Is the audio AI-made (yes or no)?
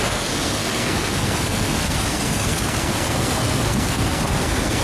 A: yes